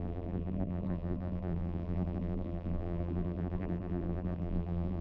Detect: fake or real fake